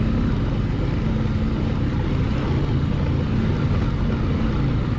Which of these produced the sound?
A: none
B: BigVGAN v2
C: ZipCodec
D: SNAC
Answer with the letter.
A